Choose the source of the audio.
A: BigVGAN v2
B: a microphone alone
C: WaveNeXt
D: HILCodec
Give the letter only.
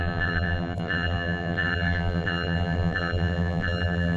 A